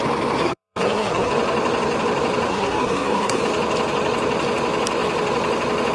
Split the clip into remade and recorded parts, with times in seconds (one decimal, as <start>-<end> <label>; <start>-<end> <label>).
0.0-0.4 recorded; 0.4-1.3 remade; 1.3-2.5 recorded; 2.5-3.4 remade; 3.4-5.9 recorded